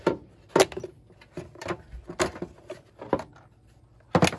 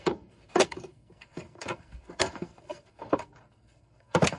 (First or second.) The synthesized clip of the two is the second